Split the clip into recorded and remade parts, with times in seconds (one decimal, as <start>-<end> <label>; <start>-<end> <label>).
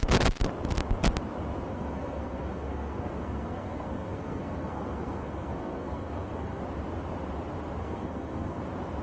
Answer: 0.0-1.7 recorded; 1.7-6.6 remade; 6.6-7.8 recorded; 7.8-8.6 remade; 8.6-9.0 recorded